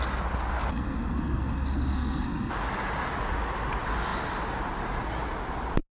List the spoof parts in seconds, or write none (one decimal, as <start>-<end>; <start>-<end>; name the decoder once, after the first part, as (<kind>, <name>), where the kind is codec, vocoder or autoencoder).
0.7-2.5 (codec, SNAC)